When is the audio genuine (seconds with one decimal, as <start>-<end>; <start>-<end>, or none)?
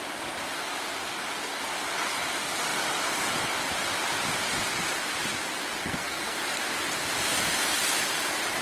0.0-5.8; 6.4-8.6